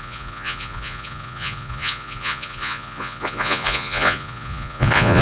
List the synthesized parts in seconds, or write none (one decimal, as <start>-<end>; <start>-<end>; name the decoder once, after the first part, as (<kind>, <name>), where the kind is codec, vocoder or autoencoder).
0.0-5.2 (vocoder, Vocos)